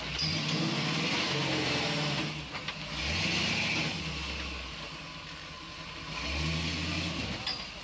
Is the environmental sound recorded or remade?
recorded